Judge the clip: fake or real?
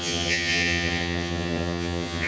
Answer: fake